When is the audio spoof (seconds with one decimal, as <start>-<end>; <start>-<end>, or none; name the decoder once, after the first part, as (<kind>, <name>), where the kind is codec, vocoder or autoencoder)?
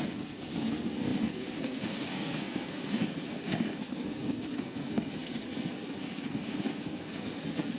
0.0-7.8 (codec, SNAC)